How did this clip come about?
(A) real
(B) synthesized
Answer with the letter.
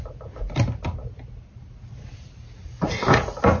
A